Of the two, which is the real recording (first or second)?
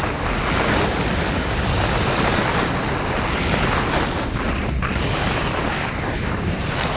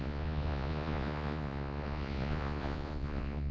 first